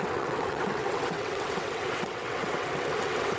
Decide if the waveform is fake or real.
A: fake